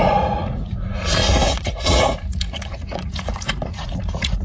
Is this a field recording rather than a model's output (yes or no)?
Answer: no